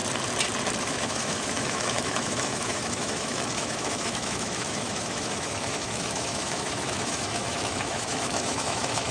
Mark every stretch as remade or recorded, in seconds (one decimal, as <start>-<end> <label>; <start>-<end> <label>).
0.0-0.8 recorded; 0.8-9.1 remade